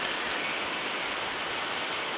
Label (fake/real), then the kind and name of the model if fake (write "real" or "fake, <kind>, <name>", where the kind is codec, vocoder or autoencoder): real